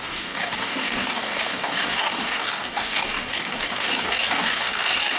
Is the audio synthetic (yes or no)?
yes